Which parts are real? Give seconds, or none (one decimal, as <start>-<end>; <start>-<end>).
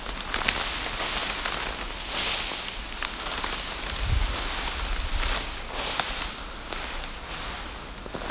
0.0-8.3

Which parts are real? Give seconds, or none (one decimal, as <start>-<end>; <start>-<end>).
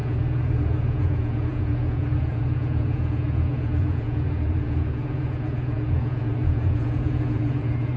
none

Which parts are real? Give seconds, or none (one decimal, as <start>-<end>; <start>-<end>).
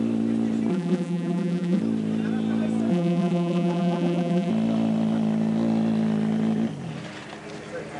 0.0-0.7; 1.8-2.9; 4.5-8.0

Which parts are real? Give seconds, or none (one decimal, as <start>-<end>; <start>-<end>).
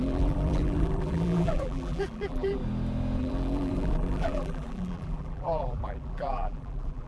2.6-3.2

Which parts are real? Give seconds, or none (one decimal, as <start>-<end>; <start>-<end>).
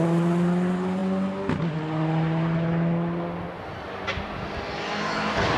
0.0-5.6